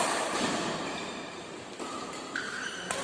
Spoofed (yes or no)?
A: yes